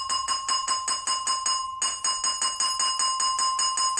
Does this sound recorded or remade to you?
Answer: recorded